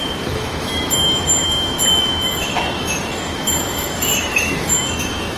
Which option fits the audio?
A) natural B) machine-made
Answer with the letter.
B